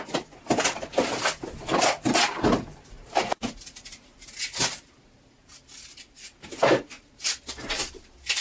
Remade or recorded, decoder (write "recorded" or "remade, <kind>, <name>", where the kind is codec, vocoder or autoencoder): recorded